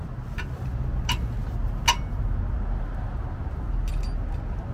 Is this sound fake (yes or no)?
no